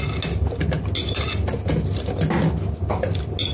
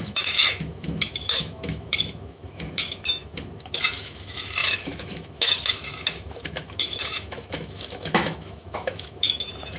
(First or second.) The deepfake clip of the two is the second